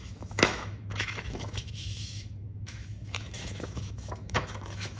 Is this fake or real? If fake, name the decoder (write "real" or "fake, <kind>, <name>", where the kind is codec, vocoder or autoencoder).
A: fake, autoencoder, DAC-VAE